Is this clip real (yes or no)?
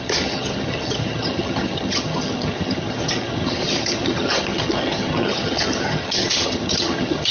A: no